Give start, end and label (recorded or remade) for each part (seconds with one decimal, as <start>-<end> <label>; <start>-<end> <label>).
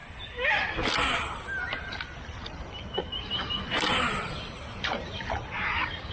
0.0-3.0 recorded; 3.0-3.4 remade; 3.4-4.5 recorded; 4.5-6.1 remade